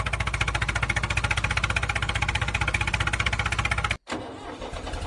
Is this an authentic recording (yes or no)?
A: yes